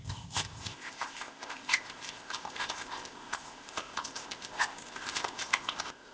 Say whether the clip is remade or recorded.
remade